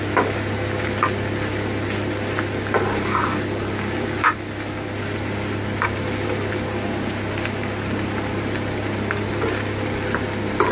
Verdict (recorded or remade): recorded